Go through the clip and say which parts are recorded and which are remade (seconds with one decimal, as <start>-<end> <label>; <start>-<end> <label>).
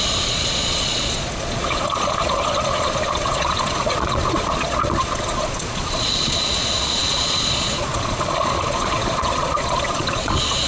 0.0-10.7 remade